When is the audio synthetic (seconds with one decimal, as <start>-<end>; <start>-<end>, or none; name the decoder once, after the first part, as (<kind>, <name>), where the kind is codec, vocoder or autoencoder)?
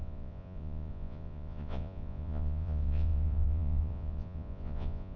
0.0-5.2 (vocoder, Vocos)